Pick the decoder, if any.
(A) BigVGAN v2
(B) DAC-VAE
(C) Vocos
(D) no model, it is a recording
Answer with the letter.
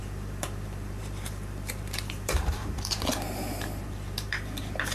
A